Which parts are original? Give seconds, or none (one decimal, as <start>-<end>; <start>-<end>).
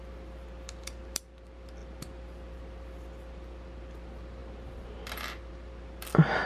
none